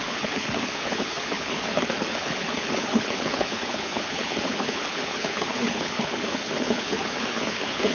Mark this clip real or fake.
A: fake